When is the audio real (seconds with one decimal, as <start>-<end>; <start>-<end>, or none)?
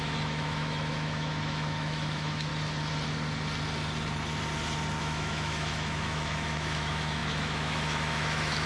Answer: 2.5-5.0